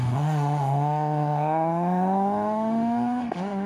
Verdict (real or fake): fake